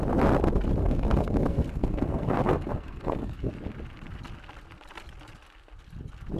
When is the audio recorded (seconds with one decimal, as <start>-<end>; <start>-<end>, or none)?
0.0-0.8; 3.5-6.4